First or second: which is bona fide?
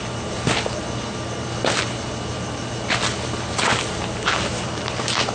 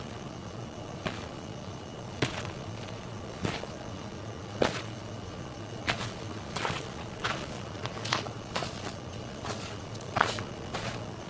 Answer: first